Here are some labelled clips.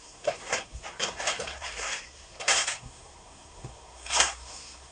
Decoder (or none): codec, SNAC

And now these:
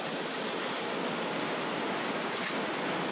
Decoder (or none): none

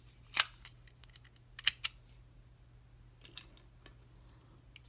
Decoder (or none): none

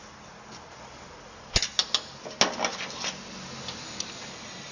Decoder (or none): none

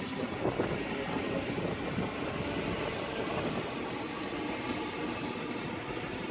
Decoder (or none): none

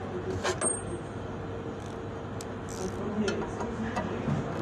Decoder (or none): none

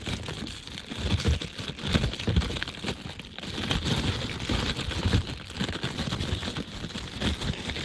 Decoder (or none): none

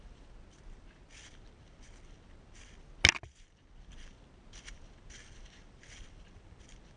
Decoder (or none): none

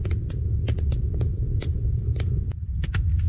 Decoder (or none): vocoder, BigVGAN v2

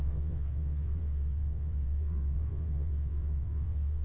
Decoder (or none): vocoder, WaveNeXt